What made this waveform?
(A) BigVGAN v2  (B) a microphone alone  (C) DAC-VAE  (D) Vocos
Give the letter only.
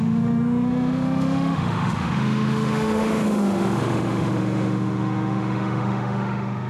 C